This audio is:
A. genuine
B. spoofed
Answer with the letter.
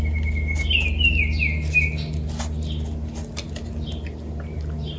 A